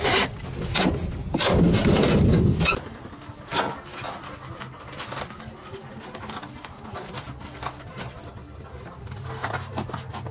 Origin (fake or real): real